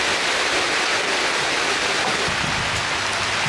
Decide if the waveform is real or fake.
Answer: real